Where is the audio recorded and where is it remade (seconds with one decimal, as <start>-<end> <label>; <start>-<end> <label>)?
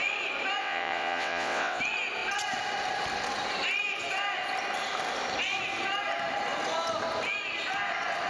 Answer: 0.0-0.6 recorded; 0.6-1.8 remade; 1.8-8.3 recorded